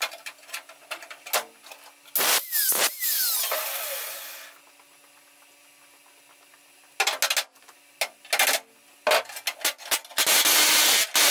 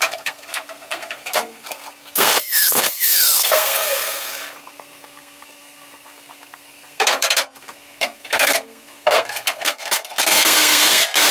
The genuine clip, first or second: first